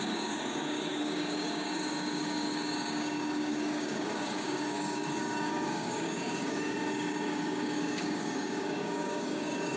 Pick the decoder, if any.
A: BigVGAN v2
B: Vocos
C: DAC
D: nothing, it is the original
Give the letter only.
C